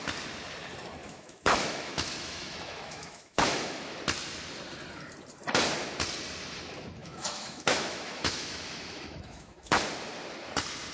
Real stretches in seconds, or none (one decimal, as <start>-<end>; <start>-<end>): 0.0-1.0; 4.0-7.0; 9.7-10.9